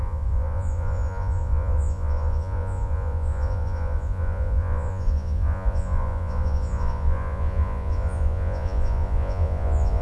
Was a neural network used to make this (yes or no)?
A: yes